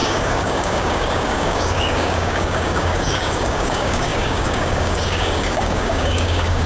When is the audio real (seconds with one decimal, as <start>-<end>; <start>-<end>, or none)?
none